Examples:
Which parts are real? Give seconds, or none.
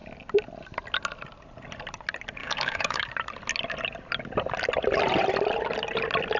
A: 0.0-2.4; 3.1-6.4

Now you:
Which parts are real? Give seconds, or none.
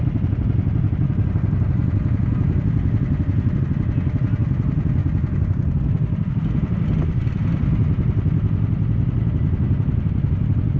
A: 0.0-5.0; 6.3-10.8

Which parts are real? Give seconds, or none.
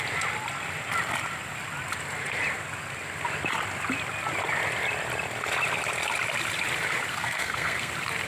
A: 0.0-7.1; 7.9-8.3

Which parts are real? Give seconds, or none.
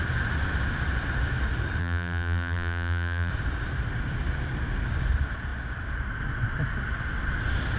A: 0.0-1.8; 3.3-7.8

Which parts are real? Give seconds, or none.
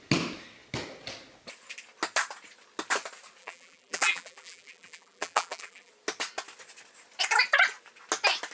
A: 0.0-3.4; 5.9-8.5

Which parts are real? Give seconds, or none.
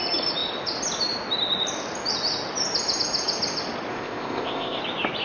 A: 0.0-3.9; 4.8-5.2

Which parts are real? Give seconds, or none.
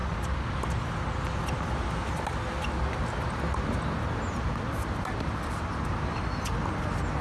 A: 0.0-7.2